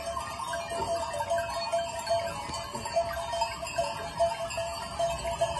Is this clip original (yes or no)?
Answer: yes